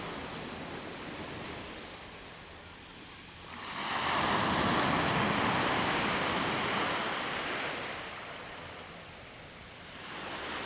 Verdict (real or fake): real